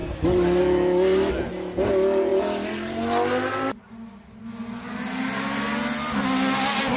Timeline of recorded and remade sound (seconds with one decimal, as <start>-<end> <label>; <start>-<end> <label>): 0.0-7.0 recorded